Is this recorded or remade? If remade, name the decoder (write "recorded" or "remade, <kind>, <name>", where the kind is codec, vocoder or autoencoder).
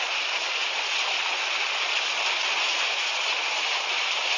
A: recorded